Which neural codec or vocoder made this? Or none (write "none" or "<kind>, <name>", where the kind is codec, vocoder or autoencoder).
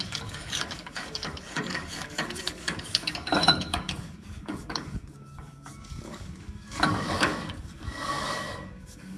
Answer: codec, DAC